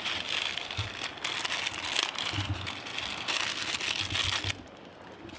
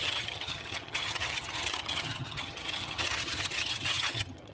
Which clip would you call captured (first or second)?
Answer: first